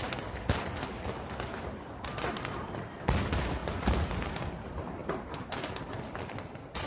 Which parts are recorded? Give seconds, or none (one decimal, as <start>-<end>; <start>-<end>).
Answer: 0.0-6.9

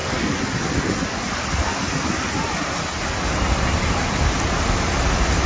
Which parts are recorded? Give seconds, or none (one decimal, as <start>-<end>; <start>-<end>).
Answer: 0.0-5.5

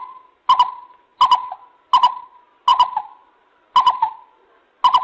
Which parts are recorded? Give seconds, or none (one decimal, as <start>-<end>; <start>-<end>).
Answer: 0.0-5.0